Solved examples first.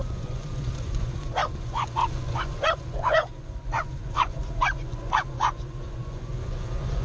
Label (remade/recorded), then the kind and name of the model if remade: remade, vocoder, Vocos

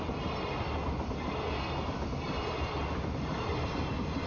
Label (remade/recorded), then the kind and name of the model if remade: recorded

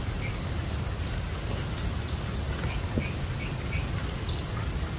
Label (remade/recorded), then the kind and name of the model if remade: recorded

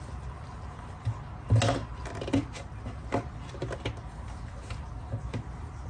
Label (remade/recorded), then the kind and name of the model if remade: recorded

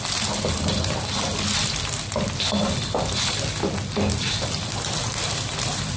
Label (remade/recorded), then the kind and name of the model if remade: recorded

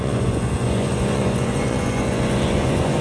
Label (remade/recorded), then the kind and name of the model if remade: remade, vocoder, Vocos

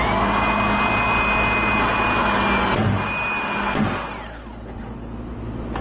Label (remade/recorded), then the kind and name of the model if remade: recorded